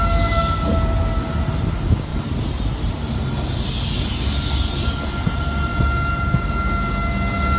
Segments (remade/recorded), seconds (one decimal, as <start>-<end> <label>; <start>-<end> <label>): 0.0-7.6 recorded

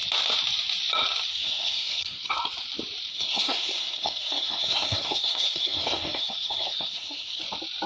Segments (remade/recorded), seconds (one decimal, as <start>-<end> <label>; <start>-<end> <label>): 0.0-1.3 recorded; 1.3-2.3 remade; 2.3-3.1 recorded; 3.1-7.4 remade; 7.4-7.9 recorded

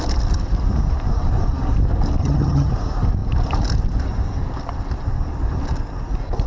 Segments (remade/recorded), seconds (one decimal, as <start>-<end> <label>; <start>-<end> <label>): 0.0-2.2 recorded; 2.2-2.7 remade; 2.7-6.5 recorded

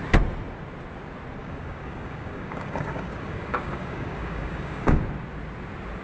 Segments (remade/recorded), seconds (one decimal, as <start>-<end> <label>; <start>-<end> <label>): 0.0-1.4 recorded; 1.4-5.0 remade; 5.0-6.0 recorded

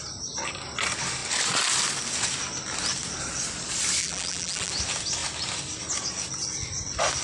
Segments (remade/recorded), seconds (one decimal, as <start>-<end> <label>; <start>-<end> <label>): 0.0-4.0 recorded; 4.0-4.7 remade; 4.7-7.2 recorded

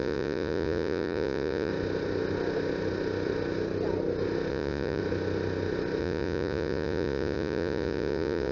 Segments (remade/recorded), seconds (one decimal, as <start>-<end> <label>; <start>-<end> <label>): 0.0-1.7 remade; 1.7-4.5 recorded; 4.5-5.0 remade; 5.0-6.0 recorded; 6.0-8.5 remade

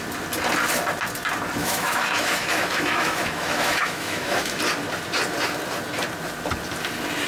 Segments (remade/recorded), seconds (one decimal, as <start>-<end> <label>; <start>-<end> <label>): 0.0-1.6 recorded; 1.6-4.6 remade; 4.6-7.3 recorded

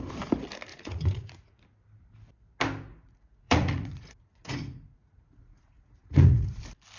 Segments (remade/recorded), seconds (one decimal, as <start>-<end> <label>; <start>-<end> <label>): 0.0-0.7 recorded; 0.7-1.6 remade; 1.6-2.9 recorded; 2.9-6.6 remade; 6.6-7.0 recorded